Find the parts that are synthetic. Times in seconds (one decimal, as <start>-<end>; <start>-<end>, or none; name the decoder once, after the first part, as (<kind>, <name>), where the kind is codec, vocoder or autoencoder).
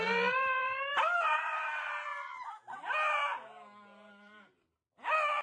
0.0-2.1 (vocoder, BigVGAN v2); 4.1-5.4